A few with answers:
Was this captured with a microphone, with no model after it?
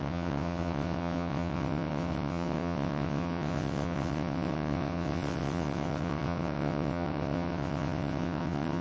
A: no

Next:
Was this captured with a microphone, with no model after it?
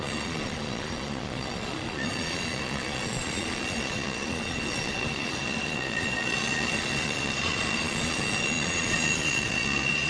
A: no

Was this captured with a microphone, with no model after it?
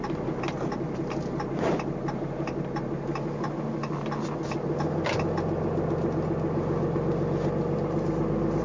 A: yes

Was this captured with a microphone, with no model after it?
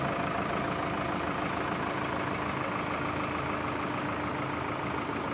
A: yes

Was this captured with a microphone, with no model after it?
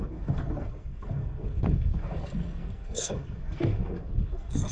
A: no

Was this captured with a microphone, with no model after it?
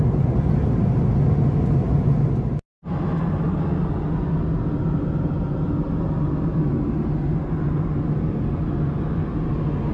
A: yes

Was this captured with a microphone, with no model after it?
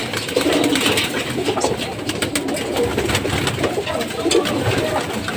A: yes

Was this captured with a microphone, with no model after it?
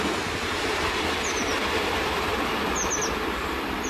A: no